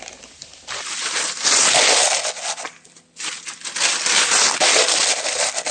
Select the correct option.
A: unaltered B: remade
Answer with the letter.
A